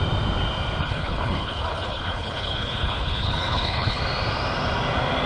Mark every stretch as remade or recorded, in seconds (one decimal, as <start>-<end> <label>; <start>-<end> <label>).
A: 0.0-0.8 recorded; 0.8-4.0 remade; 4.0-5.3 recorded